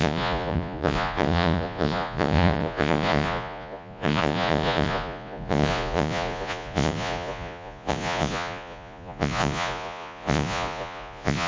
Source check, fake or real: fake